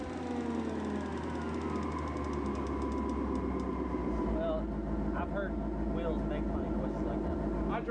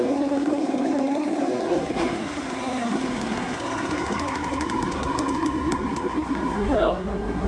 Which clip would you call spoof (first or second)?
second